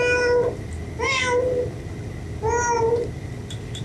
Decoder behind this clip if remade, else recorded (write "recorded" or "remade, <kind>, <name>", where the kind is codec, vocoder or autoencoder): recorded